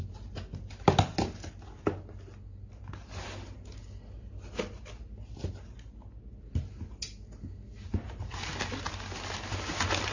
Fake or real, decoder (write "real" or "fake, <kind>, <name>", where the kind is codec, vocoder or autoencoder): real